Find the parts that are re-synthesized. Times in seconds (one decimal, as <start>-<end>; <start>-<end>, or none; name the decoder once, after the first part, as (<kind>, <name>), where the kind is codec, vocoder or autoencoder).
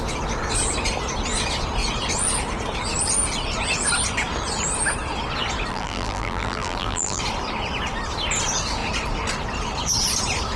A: 5.7-7.2 (vocoder, BigVGAN v2)